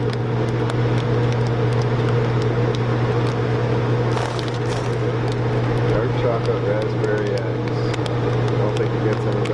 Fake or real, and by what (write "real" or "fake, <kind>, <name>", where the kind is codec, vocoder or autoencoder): real